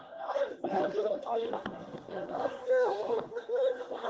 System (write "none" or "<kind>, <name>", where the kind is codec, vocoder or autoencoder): codec, SNAC